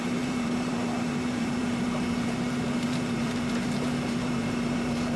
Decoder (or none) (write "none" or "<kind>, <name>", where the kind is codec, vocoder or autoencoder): vocoder, BigVGAN v2